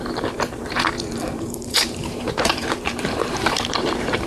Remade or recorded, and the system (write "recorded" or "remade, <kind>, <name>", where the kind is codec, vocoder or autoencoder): remade, vocoder, BigVGAN v2